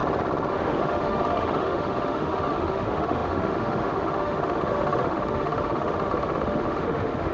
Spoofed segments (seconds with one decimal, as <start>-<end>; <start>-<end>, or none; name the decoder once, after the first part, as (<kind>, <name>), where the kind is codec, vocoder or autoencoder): 0.5-7.3 (autoencoder, DAC-VAE)